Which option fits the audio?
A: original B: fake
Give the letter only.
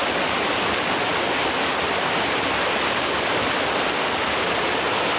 A